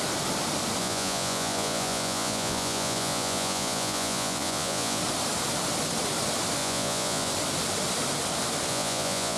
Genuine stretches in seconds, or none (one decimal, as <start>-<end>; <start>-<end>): 0.0-0.8; 5.0-6.6; 7.3-8.7